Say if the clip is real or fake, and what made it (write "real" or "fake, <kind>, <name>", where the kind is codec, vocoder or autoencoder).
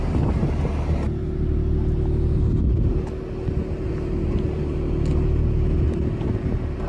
real